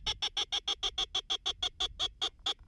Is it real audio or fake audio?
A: real